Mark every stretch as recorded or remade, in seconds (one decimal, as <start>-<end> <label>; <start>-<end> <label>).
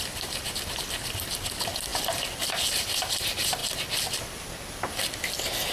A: 0.0-5.7 recorded